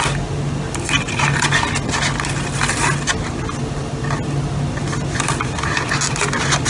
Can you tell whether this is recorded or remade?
recorded